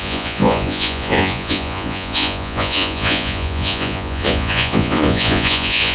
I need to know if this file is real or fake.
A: fake